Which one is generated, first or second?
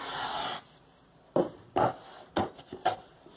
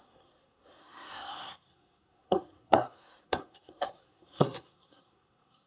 second